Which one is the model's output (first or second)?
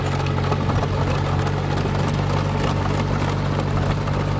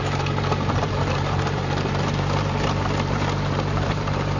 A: second